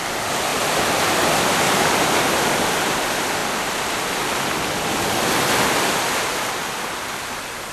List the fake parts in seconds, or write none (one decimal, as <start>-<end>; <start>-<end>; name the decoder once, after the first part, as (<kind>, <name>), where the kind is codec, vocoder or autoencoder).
none

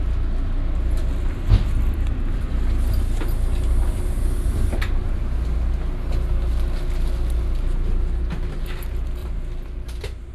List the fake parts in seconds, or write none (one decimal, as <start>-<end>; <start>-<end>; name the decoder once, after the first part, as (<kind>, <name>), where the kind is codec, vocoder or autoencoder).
1.0-3.0 (vocoder, BigVGAN v2); 9.2-10.3

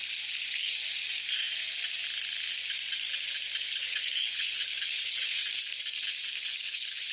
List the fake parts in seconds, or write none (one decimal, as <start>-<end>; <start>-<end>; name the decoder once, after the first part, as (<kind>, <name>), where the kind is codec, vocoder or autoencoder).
3.6-5.4 (codec, HILCodec); 6.5-7.1

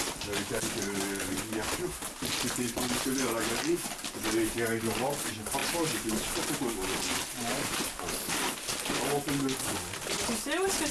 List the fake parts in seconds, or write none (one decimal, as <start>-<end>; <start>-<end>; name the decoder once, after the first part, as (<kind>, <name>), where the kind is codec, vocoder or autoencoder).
none

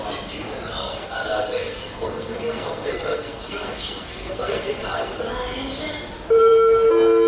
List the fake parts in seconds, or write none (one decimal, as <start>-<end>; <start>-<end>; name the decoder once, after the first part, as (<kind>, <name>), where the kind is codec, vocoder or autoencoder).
0.8-5.2 (codec, SNAC)

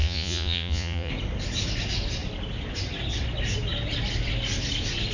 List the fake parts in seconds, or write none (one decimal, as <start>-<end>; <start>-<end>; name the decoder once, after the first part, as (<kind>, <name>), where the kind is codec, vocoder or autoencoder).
0.0-1.1 (vocoder, Vocos)

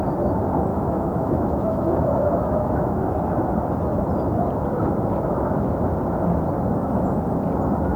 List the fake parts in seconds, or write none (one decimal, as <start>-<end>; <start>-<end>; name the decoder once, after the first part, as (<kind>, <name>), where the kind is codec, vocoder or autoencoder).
0.7-3.0 (autoencoder, DAC-VAE)